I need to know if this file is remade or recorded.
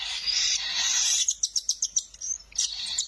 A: recorded